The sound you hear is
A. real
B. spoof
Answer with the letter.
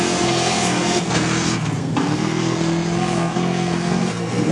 B